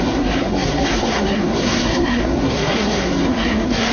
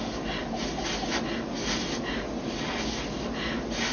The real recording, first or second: second